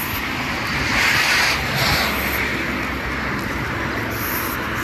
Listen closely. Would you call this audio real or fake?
real